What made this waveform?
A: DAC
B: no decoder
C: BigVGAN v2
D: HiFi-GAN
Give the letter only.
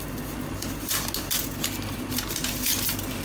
B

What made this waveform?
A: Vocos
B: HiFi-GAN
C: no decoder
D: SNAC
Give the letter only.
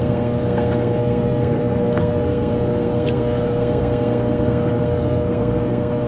D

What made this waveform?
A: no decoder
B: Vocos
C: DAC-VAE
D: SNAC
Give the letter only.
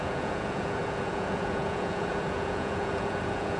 B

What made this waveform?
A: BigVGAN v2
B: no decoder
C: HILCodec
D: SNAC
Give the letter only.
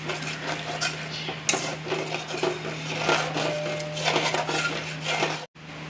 B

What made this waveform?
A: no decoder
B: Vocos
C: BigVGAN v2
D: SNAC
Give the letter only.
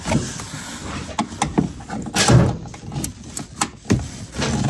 A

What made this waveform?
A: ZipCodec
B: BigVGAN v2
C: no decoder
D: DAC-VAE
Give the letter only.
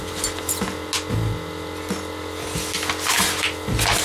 C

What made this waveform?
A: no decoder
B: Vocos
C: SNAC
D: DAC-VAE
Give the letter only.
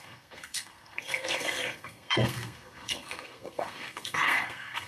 C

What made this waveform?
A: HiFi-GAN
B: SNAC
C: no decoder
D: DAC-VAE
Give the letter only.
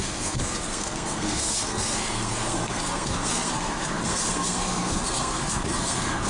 B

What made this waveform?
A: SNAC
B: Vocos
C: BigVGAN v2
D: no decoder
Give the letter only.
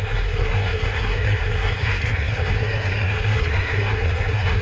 A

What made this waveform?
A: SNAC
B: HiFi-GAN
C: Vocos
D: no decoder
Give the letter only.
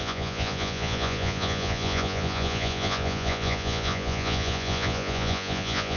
C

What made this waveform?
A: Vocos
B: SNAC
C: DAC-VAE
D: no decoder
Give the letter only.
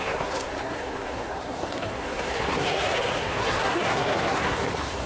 B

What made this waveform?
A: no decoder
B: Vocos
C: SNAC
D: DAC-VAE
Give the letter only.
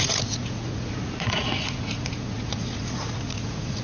B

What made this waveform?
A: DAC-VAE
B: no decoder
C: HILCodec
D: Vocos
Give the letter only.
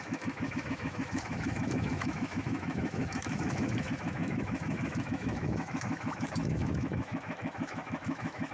A